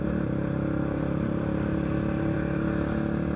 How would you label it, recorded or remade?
remade